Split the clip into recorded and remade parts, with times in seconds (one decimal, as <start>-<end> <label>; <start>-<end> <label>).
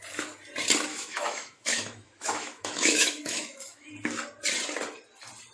0.0-0.9 recorded; 0.9-3.9 remade; 3.9-5.5 recorded